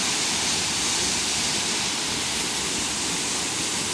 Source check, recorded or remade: recorded